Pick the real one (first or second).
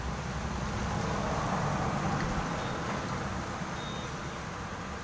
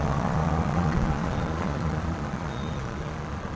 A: first